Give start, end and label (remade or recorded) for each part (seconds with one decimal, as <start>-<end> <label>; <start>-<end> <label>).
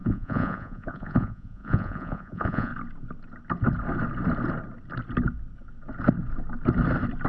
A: 0.0-2.7 remade; 2.7-7.3 recorded